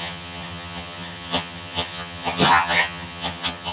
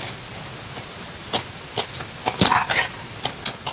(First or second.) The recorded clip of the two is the second